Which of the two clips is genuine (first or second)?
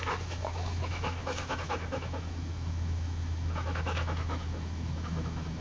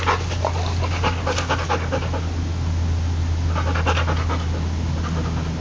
second